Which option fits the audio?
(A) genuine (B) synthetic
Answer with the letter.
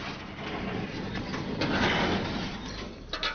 A